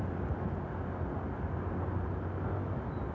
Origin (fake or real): real